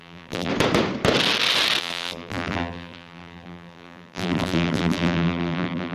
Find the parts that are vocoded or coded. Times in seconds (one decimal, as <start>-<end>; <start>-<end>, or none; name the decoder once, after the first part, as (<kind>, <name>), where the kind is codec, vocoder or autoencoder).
0.0-0.5 (vocoder, BigVGAN v2); 1.8-5.9